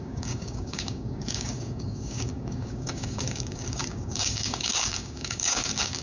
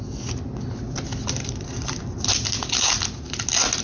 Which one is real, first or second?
second